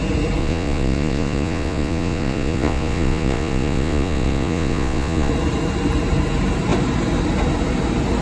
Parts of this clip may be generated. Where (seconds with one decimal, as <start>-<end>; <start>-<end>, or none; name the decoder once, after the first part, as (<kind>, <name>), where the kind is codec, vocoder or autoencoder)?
0.4-5.3 (vocoder, Vocos)